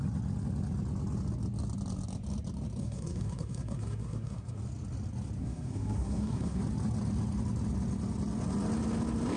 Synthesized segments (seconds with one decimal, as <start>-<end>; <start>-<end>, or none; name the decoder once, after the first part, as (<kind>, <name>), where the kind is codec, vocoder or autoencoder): 2.8-4.6 (codec, SNAC); 5.4-6.6